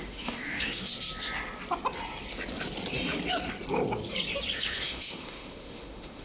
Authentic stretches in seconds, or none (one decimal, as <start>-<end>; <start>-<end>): 0.9-4.6